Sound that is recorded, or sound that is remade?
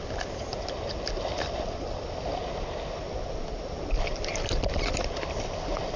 recorded